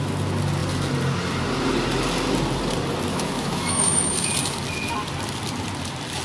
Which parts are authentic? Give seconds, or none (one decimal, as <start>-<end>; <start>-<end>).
0.0-3.1; 4.3-6.2